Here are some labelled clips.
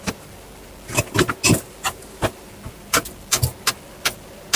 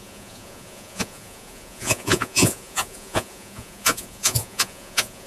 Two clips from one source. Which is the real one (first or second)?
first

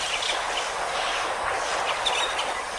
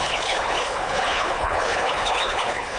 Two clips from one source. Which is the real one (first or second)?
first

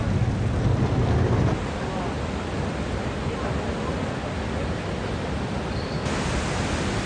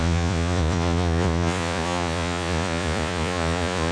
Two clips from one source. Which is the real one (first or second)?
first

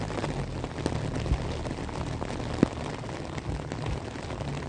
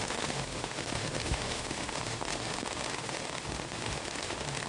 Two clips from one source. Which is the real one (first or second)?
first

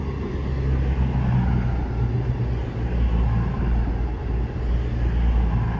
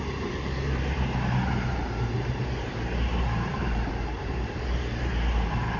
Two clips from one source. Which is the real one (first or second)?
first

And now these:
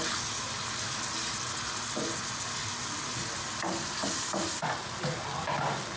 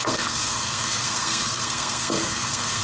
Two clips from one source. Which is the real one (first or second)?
first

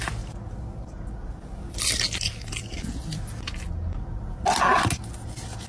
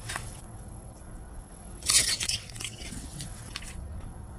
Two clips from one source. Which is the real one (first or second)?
first